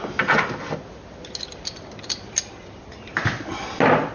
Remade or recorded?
recorded